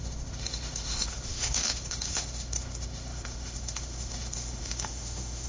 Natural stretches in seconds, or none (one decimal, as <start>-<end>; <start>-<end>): none